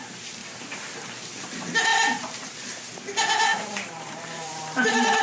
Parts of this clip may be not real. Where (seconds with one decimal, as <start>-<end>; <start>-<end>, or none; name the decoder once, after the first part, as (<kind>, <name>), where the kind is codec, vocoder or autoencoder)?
0.4-0.9 (vocoder, BigVGAN v2); 1.9-2.9; 3.5-5.2